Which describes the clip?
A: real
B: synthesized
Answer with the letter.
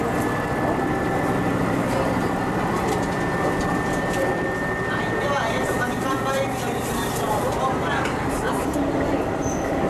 A